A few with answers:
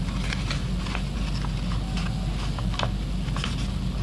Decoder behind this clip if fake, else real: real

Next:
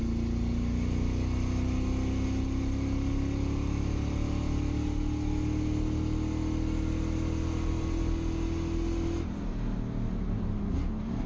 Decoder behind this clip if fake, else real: real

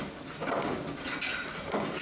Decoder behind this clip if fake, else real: real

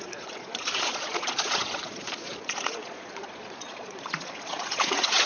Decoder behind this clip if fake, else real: fake, vocoder, Vocos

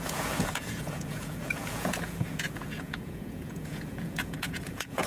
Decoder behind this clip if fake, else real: fake, vocoder, Vocos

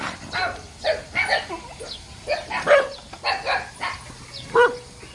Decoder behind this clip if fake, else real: real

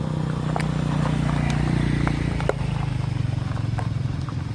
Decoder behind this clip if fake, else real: real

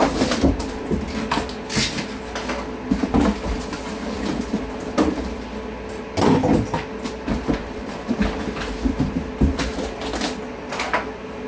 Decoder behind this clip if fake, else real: real